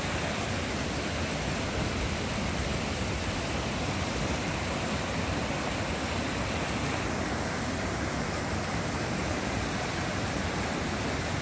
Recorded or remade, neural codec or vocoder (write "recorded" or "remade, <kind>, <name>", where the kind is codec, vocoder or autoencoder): recorded